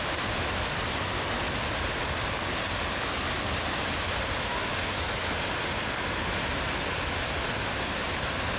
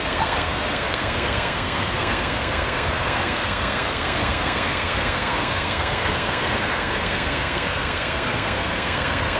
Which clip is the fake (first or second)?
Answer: second